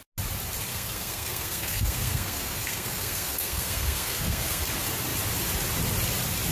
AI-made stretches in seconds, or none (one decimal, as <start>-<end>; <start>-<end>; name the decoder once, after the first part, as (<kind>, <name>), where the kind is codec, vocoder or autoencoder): 0.7-4.6 (codec, SNAC)